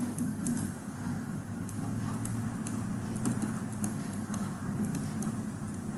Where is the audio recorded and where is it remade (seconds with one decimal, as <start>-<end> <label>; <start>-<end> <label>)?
0.0-2.3 remade; 2.3-3.9 recorded; 3.9-5.0 remade; 5.0-6.0 recorded